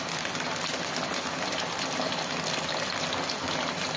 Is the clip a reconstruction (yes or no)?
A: no